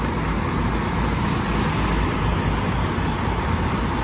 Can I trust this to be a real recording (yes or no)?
yes